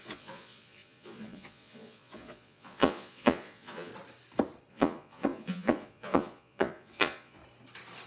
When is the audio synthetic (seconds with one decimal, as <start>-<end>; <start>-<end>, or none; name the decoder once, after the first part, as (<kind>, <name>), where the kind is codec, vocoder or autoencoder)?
0.0-3.9 (vocoder, Vocos); 4.7-7.4